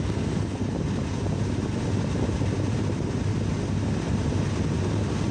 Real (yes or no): yes